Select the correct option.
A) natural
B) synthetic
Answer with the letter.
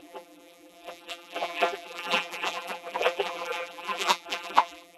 B